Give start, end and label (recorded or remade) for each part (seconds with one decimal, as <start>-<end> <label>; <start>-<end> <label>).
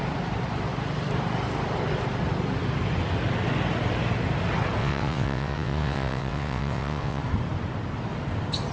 0.0-4.8 recorded; 4.8-7.2 remade; 7.2-8.7 recorded